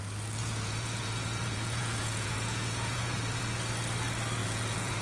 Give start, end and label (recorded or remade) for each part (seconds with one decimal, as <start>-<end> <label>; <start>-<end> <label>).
0.0-0.4 recorded; 0.4-3.4 remade; 3.4-4.4 recorded; 4.4-5.0 remade